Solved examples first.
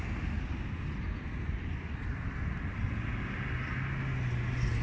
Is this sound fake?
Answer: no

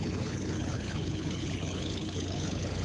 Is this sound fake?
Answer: yes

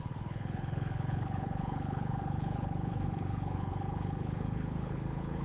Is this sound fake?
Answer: yes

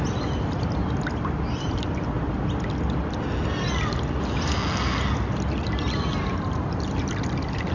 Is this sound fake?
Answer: no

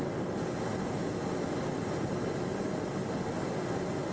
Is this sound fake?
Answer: no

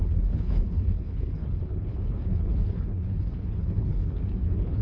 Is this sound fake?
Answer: yes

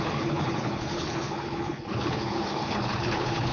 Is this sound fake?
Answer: yes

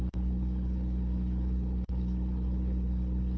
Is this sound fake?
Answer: yes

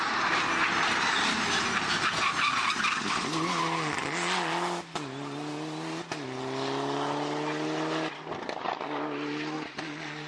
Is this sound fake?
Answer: no